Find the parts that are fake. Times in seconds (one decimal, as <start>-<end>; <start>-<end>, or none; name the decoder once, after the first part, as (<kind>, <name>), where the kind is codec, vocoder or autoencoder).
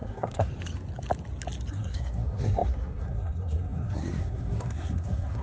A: 0.0-0.5 (codec, SNAC); 1.7-5.4